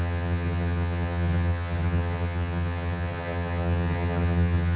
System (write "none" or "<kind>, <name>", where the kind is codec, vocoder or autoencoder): vocoder, HiFi-GAN